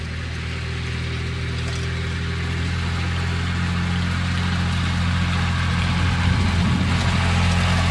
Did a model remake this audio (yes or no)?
no